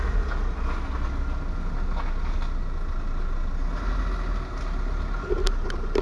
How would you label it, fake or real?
real